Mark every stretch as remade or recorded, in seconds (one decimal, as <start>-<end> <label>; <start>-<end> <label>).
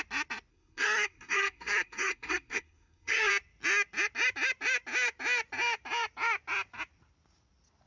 0.0-0.5 recorded; 0.5-3.3 remade; 3.3-7.9 recorded